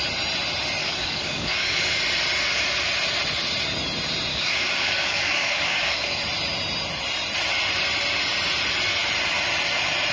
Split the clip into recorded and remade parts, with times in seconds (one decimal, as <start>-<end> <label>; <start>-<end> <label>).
0.0-0.8 recorded; 0.8-2.0 remade; 2.0-4.3 recorded; 4.3-6.2 remade; 6.2-10.1 recorded